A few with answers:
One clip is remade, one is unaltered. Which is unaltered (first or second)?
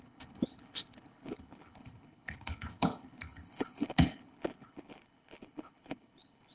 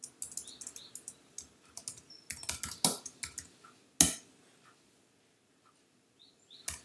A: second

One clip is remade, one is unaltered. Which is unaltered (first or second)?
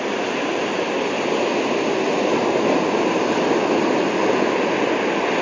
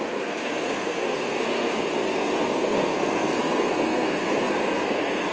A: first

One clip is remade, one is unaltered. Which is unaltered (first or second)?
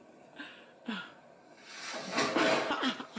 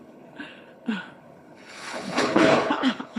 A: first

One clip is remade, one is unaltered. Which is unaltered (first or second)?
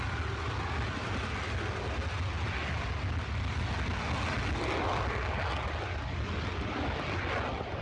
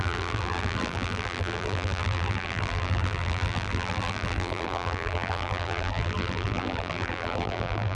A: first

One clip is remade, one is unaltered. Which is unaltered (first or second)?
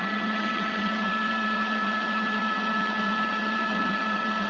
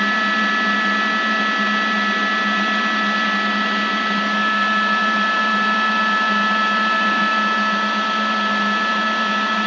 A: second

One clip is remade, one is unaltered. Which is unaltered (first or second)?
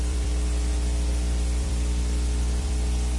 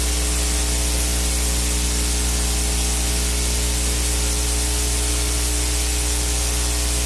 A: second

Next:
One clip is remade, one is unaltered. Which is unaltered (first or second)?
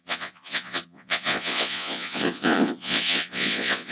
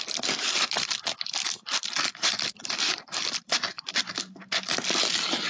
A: second